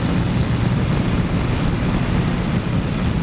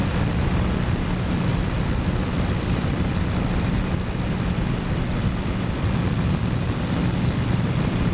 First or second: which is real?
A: first